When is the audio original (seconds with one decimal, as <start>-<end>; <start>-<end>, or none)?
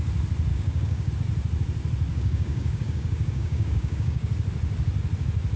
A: 0.0-0.5; 1.1-2.1; 4.3-5.6